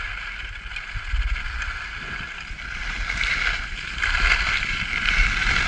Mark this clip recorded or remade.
recorded